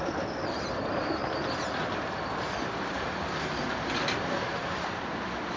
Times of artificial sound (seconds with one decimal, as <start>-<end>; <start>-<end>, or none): none